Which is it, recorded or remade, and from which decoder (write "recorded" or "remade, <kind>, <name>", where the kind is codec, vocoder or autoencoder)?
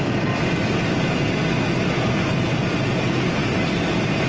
recorded